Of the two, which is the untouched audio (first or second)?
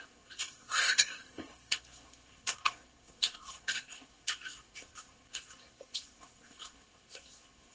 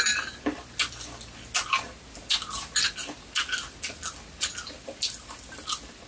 second